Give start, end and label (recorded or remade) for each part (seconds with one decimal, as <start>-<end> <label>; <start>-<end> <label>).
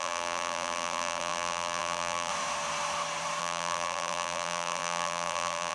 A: 0.0-2.3 remade; 2.3-3.4 recorded; 3.4-5.7 remade